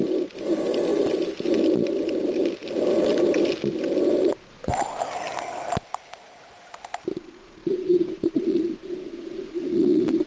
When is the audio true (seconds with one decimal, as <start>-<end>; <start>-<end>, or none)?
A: 0.0-4.2; 5.0-7.1